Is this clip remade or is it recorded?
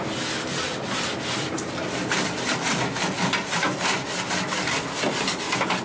recorded